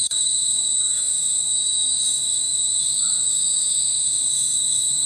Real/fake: fake